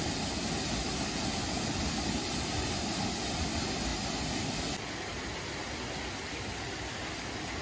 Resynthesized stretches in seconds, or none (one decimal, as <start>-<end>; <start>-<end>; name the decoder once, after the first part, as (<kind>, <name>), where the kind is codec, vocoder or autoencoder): none